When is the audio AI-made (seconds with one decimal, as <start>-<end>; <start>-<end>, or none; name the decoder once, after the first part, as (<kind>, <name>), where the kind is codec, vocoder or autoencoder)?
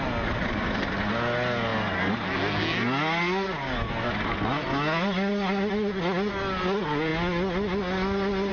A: none